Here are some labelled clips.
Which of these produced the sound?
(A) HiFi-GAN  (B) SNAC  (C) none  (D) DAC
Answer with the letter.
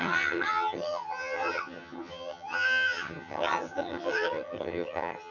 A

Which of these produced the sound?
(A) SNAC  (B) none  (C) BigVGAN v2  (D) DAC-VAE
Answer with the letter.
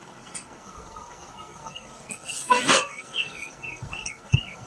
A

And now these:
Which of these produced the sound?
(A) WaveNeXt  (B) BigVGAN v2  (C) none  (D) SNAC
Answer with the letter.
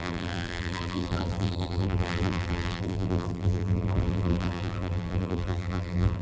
B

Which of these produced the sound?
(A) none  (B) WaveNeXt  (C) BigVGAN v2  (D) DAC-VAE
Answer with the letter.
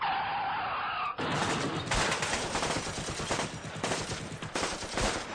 A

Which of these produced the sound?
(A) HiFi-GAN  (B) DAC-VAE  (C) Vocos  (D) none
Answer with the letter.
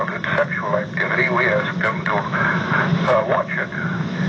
B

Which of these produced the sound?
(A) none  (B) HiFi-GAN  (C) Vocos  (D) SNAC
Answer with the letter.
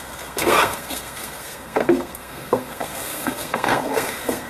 D